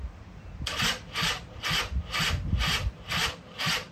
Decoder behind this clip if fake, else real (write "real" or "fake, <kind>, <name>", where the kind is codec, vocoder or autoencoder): fake, vocoder, BigVGAN v2